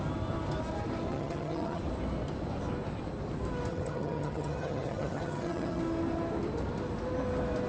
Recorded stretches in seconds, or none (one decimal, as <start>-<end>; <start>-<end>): 0.0-1.1; 1.8-3.7; 5.8-7.7